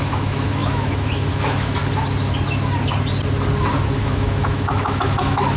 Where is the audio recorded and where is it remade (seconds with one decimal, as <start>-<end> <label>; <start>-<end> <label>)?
0.0-1.8 remade; 1.8-4.0 recorded; 4.0-5.6 remade